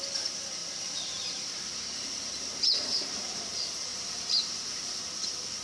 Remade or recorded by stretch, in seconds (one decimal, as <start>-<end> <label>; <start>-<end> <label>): 0.0-0.6 recorded; 0.6-1.6 remade; 1.6-3.9 recorded; 3.9-5.0 remade; 5.0-5.6 recorded